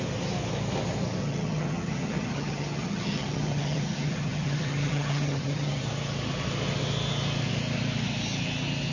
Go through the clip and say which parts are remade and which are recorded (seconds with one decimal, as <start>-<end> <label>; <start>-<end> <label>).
0.0-1.2 recorded; 1.2-5.8 remade; 5.8-8.9 recorded